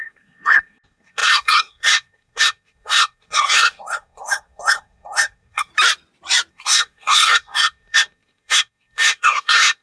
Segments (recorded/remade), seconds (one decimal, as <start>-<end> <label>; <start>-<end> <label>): 0.0-5.7 remade; 5.7-6.5 recorded; 6.5-9.8 remade